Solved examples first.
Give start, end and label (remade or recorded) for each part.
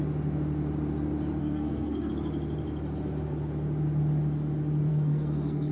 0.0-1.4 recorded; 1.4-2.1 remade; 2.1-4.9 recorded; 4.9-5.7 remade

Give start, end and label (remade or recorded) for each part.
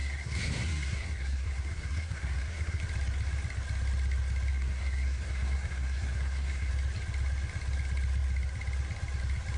0.0-2.8 remade; 2.8-4.5 recorded; 4.5-6.7 remade; 6.7-9.6 recorded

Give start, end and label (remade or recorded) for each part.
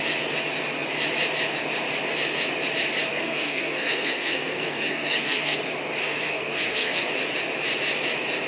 0.0-3.1 recorded; 3.1-5.6 remade; 5.6-6.0 recorded; 6.0-7.1 remade; 7.1-8.5 recorded